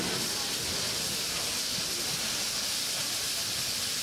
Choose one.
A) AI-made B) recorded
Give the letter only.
B